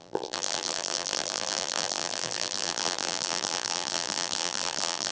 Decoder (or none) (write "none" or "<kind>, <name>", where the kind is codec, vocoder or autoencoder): vocoder, BigVGAN v2